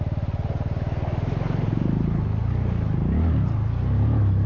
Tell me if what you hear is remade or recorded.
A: recorded